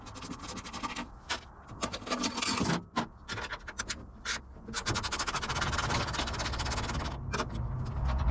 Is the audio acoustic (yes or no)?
yes